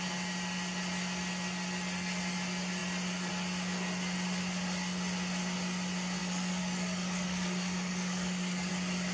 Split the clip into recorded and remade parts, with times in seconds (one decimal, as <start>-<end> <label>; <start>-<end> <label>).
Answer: 0.0-6.2 recorded; 6.2-8.7 remade; 8.7-9.1 recorded

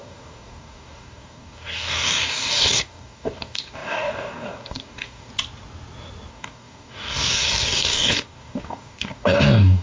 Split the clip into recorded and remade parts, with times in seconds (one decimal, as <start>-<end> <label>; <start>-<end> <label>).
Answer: 0.0-5.3 remade; 5.3-6.3 recorded; 6.3-9.8 remade

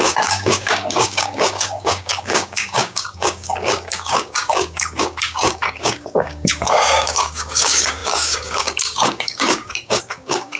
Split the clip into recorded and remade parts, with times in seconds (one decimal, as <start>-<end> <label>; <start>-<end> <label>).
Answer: 0.0-10.6 remade

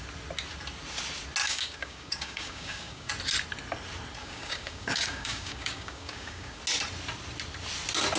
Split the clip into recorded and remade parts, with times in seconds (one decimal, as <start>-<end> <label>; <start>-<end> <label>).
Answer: 0.0-1.4 recorded; 1.4-3.1 remade; 3.1-4.2 recorded; 4.2-6.6 remade; 6.6-8.2 recorded

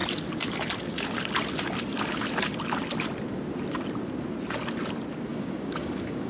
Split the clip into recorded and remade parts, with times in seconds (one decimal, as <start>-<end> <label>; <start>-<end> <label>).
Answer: 0.0-5.3 recorded; 5.3-6.3 remade